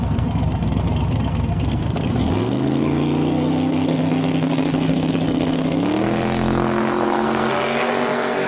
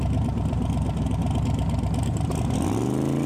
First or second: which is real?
second